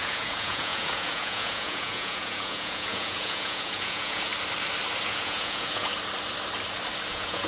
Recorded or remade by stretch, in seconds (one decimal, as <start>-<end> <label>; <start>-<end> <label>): 0.0-4.3 remade; 4.3-5.1 recorded; 5.1-5.9 remade; 5.9-7.1 recorded; 7.1-7.5 remade

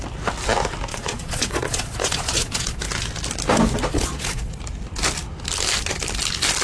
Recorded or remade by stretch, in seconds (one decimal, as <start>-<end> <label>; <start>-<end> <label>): 0.0-0.9 recorded; 0.9-2.8 remade; 2.8-3.9 recorded; 3.9-4.6 remade; 4.6-6.6 recorded

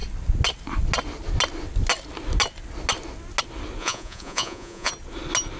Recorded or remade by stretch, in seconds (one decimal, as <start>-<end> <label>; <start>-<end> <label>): 0.0-3.8 recorded; 3.8-4.9 remade; 4.9-5.6 recorded

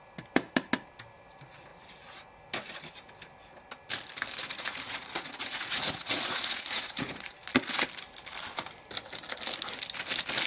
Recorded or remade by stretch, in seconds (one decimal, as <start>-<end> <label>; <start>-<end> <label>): 0.0-4.4 recorded; 4.4-7.3 remade; 7.3-10.5 recorded

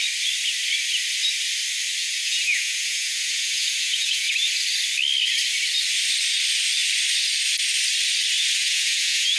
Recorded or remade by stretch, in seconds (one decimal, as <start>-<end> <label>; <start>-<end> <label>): 0.0-2.0 recorded; 2.0-4.3 remade; 4.3-8.6 recorded; 8.6-9.4 remade

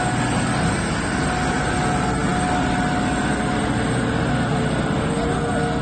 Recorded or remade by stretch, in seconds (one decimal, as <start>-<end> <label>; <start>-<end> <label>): 0.0-5.8 recorded

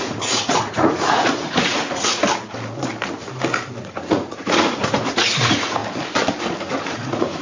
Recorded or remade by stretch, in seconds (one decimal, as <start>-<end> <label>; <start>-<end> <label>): 0.0-2.2 remade; 2.2-3.8 recorded; 3.8-5.8 remade; 5.8-6.8 recorded; 6.8-7.4 remade